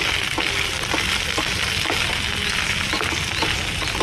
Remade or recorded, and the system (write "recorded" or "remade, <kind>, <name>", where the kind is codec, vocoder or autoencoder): recorded